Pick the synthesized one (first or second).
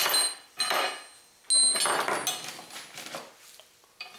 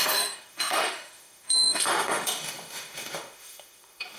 second